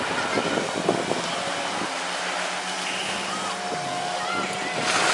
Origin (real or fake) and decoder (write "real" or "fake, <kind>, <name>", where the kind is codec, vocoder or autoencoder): real